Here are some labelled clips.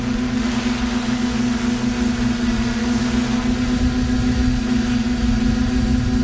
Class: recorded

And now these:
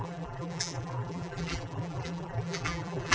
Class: remade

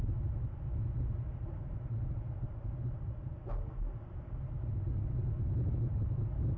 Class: recorded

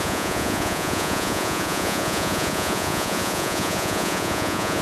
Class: remade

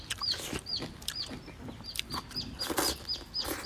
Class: recorded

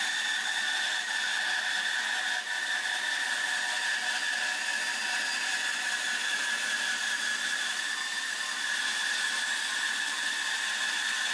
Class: recorded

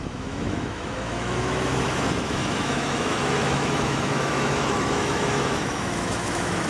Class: remade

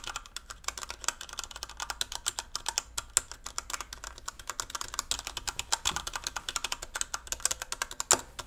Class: recorded